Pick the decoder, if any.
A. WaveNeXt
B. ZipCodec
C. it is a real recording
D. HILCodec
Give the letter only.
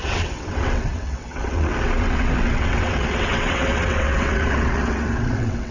A